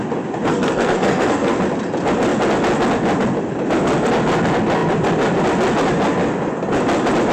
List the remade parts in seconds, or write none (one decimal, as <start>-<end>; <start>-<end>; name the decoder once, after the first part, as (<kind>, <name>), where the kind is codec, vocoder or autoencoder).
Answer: 0.5-1.6 (codec, SNAC)